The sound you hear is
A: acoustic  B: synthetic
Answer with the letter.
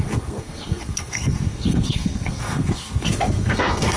B